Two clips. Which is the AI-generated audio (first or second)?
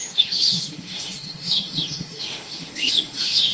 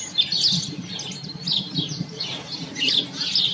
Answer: first